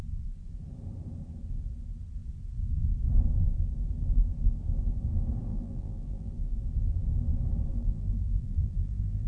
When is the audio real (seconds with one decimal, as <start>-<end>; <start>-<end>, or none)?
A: 0.0-5.5; 6.3-7.7